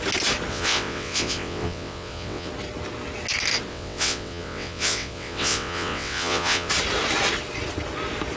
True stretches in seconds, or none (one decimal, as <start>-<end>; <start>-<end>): 0.0-0.5; 2.5-3.7; 6.7-8.4